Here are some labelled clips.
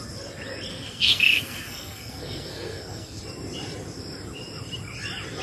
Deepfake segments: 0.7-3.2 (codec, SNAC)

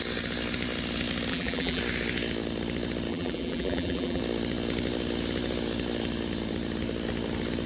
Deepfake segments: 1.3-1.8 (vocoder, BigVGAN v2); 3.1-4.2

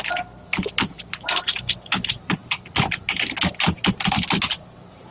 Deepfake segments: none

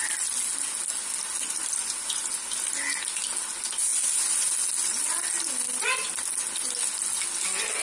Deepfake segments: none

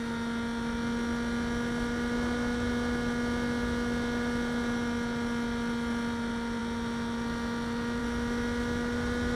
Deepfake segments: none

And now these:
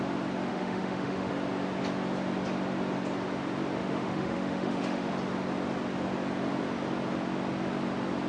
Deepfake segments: 0.5-1.3 (autoencoder, DAC-VAE); 3.8-5.1

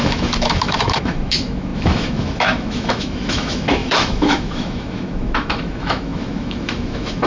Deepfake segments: 0.0-7.3 (autoencoder, DAC-VAE)

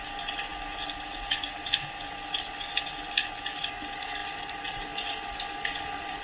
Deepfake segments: none